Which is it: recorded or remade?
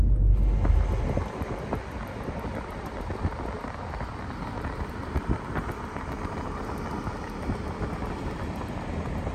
recorded